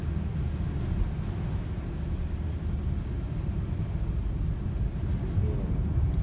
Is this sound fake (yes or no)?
no